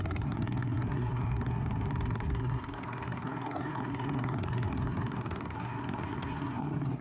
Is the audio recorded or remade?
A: remade